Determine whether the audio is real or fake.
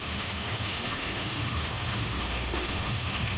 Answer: fake